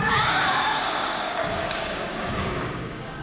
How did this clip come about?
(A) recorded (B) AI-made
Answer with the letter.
B